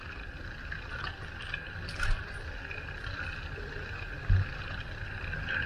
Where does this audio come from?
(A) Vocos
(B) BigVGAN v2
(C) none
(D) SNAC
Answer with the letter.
C